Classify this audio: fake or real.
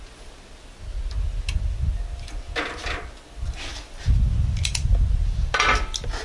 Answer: real